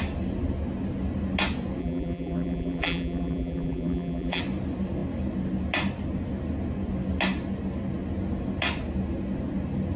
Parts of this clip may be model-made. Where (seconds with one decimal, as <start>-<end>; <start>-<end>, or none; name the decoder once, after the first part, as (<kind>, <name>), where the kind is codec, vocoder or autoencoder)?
1.8-4.4 (vocoder, BigVGAN v2)